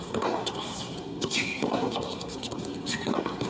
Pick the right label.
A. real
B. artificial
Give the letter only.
B